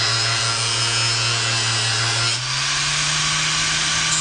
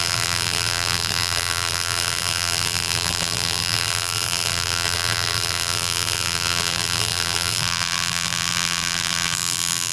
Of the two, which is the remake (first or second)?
second